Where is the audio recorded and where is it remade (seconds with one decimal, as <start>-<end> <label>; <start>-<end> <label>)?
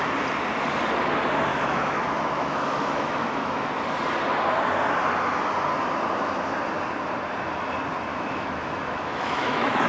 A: 0.0-1.5 recorded; 1.5-3.7 remade; 3.7-8.1 recorded; 8.1-9.9 remade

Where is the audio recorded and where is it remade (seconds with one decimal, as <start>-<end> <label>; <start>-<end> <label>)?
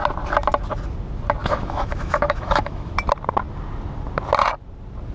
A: 0.0-1.4 recorded; 1.4-2.9 remade; 2.9-5.1 recorded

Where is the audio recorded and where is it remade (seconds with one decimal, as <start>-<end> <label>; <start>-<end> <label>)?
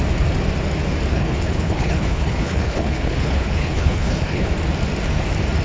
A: 0.0-1.1 recorded; 1.1-4.5 remade; 4.5-5.6 recorded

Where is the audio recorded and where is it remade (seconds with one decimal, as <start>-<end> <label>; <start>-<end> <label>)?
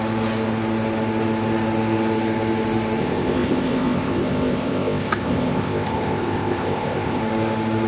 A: 0.0-3.0 recorded; 3.0-7.2 remade; 7.2-7.9 recorded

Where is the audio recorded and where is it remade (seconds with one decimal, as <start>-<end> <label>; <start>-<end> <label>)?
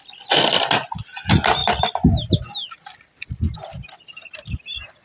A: 0.0-5.0 recorded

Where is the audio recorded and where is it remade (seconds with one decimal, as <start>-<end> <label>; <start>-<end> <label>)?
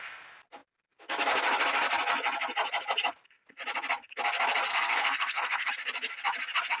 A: 0.0-4.7 recorded; 4.7-5.7 remade; 5.7-6.8 recorded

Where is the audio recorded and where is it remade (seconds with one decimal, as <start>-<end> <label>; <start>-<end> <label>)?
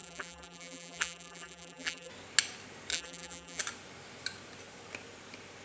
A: 0.0-2.1 remade; 2.1-2.9 recorded; 2.9-3.6 remade; 3.6-5.6 recorded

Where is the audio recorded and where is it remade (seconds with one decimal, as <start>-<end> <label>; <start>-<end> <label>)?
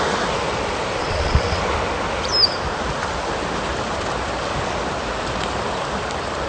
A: 0.0-1.0 recorded; 1.0-1.6 remade; 1.6-6.5 recorded